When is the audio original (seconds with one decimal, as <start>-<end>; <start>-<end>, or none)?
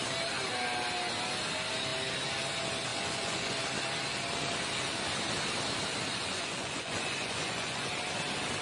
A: 0.0-2.9; 3.6-6.1; 7.9-8.6